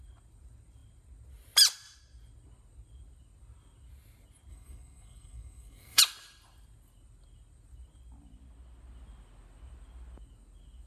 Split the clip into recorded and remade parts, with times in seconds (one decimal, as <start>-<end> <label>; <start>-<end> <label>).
0.0-4.5 recorded; 4.5-6.0 remade; 6.0-10.9 recorded